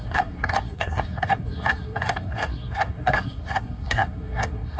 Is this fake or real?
fake